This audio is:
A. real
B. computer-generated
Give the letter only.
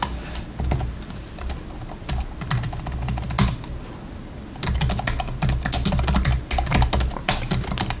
A